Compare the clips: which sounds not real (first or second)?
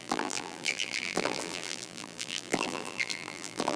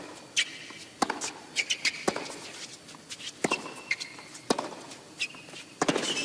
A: first